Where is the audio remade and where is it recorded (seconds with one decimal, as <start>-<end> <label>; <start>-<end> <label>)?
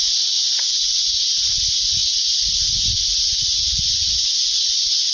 0.0-5.1 recorded